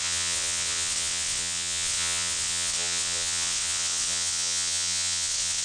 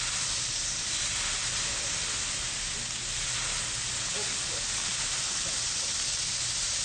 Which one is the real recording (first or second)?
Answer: second